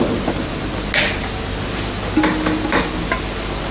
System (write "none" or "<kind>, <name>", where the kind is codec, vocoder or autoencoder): none